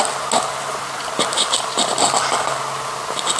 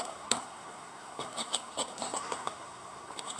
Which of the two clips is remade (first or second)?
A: second